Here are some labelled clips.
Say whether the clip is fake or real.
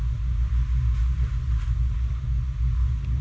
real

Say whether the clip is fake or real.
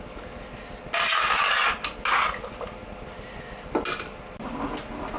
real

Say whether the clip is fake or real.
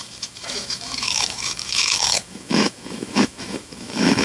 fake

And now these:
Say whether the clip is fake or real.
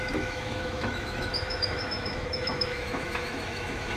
fake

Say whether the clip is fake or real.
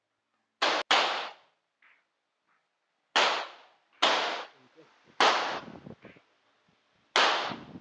real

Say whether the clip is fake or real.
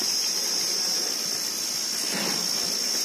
real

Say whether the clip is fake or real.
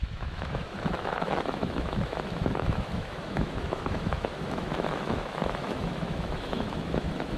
fake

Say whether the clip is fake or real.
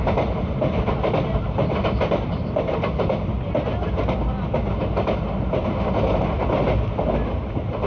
real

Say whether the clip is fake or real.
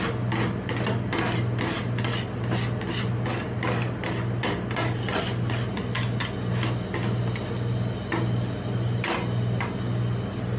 real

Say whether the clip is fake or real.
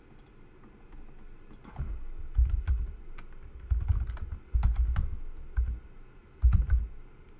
real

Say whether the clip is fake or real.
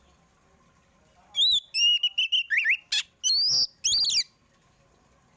real